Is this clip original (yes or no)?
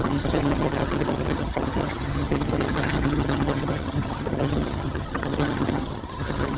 no